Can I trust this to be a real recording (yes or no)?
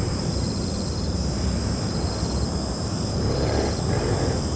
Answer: no